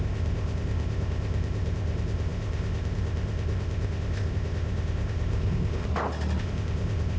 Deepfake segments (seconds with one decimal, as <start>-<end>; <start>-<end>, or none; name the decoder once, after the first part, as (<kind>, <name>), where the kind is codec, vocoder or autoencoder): 0.0-5.9 (codec, ZipCodec); 6.4-7.2